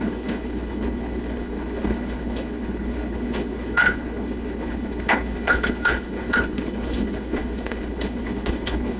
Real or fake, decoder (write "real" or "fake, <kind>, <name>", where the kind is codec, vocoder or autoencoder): fake, codec, HILCodec